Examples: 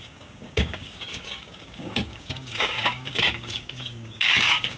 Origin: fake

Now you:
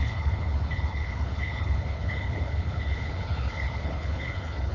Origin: fake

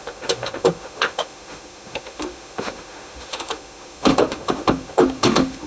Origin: fake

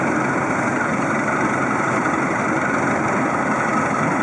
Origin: real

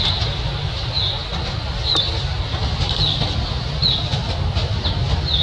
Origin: real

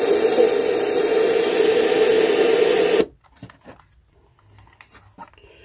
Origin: real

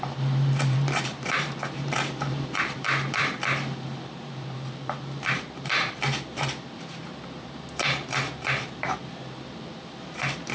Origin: fake